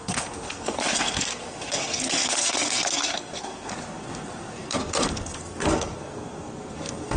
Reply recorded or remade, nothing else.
remade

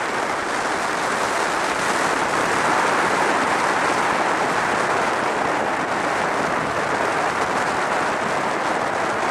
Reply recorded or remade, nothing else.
recorded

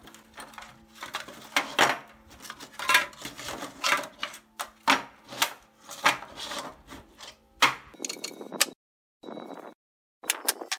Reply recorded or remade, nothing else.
recorded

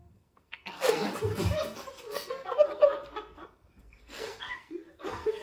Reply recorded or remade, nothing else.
remade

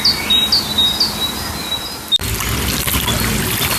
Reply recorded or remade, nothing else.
recorded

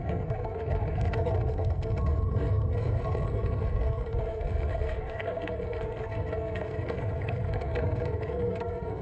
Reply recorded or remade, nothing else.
remade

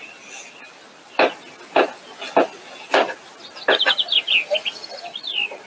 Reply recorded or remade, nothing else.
recorded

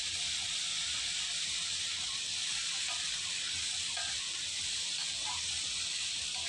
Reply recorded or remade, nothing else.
recorded